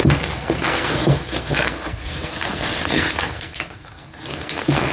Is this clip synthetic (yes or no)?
yes